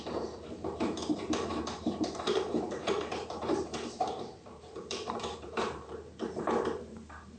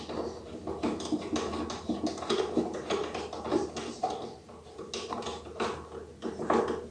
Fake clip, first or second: first